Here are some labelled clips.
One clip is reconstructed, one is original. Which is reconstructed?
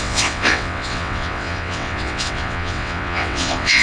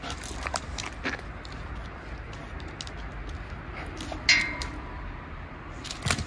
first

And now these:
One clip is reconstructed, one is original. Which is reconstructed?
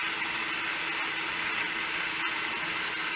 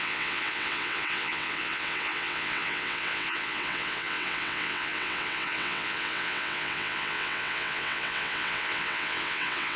second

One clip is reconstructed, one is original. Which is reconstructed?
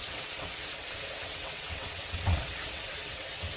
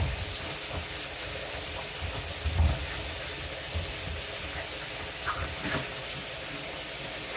first